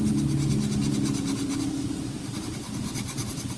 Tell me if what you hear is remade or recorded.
recorded